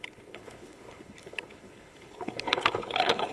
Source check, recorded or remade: remade